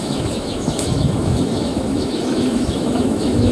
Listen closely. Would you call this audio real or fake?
fake